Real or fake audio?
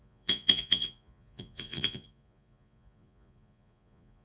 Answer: fake